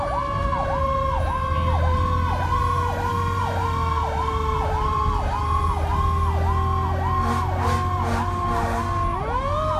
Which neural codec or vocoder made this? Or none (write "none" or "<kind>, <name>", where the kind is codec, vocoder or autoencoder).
none